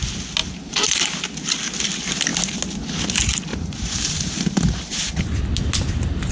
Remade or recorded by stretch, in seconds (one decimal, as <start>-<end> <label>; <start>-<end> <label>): 0.0-0.4 recorded; 0.4-1.3 remade; 1.3-3.5 recorded; 3.5-5.4 remade; 5.4-6.3 recorded